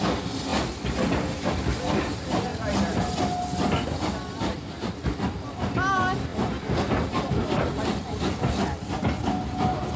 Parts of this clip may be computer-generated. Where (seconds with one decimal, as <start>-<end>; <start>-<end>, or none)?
none